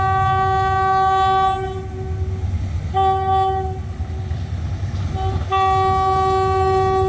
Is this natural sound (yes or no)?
yes